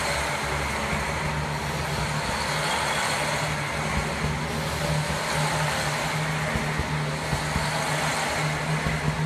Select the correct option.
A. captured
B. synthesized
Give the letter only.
A